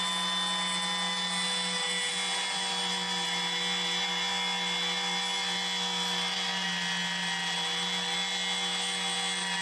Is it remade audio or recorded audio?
recorded